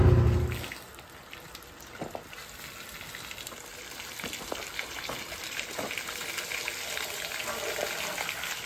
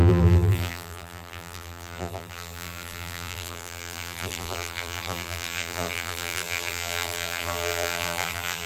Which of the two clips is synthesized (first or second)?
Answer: second